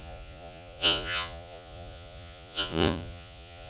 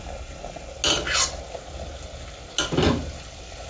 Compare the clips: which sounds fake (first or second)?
first